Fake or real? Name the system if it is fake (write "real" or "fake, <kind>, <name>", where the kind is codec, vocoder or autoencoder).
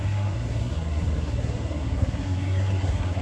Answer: fake, codec, SNAC